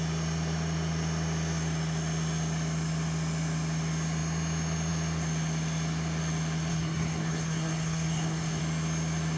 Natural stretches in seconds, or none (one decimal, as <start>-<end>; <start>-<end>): 0.0-6.7; 8.6-9.4